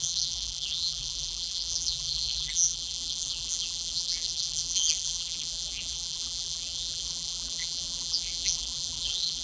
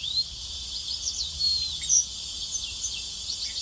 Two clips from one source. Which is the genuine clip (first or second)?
second